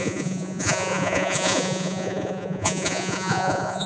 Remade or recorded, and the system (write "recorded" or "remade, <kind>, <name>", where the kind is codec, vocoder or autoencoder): remade, vocoder, Vocos